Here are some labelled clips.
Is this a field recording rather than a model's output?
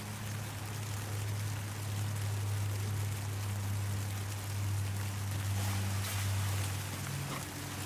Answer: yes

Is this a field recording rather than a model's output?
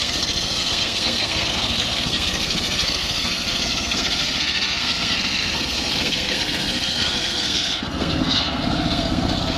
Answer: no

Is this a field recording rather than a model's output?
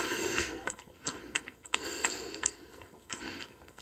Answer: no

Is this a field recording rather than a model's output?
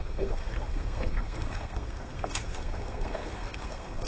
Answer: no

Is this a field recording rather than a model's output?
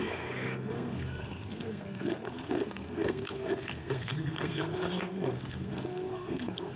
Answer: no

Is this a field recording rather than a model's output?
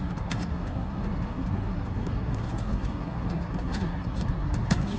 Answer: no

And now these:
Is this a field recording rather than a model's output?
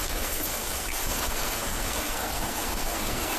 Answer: no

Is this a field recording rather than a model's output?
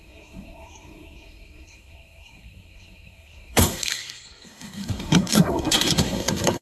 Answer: no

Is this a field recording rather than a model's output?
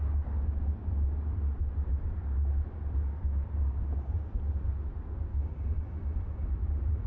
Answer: yes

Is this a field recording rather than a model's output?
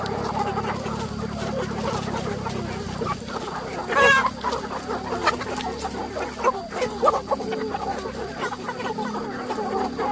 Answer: yes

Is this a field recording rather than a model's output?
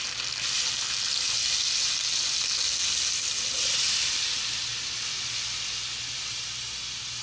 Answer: yes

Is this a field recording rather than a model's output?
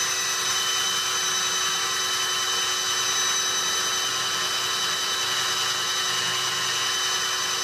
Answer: yes